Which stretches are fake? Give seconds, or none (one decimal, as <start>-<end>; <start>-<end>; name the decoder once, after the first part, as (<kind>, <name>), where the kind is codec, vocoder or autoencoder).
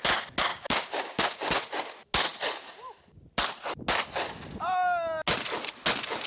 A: 0.5-1.5 (codec, DAC)